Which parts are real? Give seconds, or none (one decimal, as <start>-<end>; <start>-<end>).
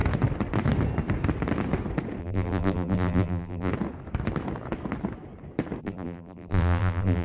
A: 0.0-2.2; 3.7-5.8